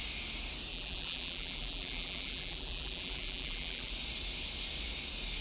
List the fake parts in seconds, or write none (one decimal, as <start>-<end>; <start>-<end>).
0.7-3.9